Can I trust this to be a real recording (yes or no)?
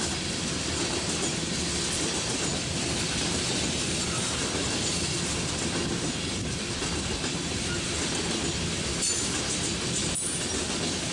yes